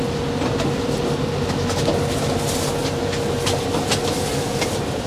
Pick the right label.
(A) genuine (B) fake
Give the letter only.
A